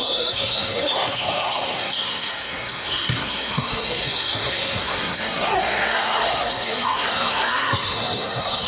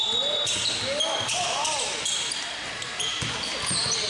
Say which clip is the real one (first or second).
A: second